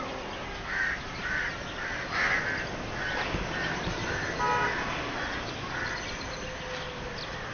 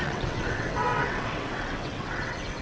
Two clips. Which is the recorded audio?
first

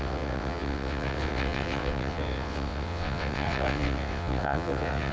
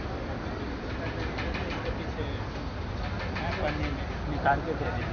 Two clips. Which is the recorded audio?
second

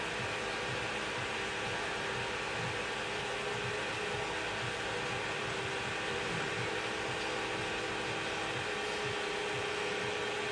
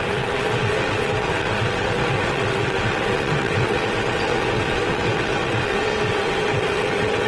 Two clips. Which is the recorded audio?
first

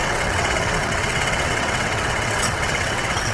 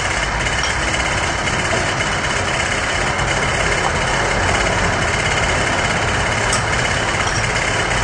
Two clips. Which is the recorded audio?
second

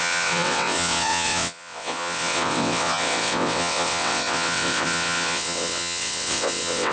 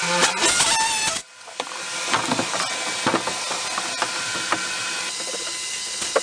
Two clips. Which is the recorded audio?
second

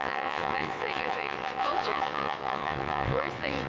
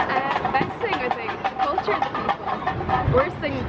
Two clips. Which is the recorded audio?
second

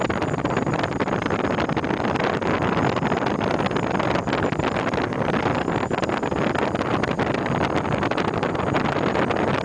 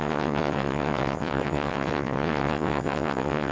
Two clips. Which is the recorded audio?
first